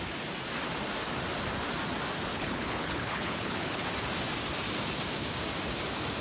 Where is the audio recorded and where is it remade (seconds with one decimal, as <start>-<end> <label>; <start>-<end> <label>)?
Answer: 0.0-2.3 recorded; 2.3-3.9 remade; 3.9-6.2 recorded